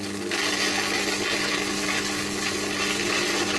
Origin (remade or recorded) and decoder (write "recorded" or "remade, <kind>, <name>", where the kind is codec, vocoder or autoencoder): recorded